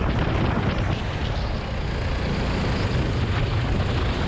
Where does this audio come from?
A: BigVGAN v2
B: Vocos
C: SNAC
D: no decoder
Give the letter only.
D